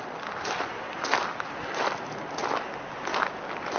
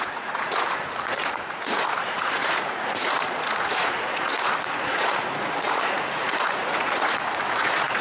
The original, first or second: first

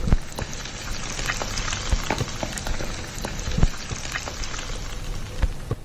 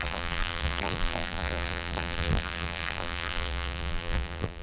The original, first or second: first